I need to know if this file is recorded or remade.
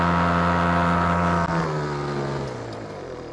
recorded